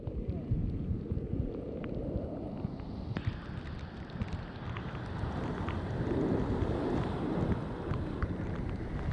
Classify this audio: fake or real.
real